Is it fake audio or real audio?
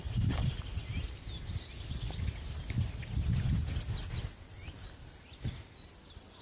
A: real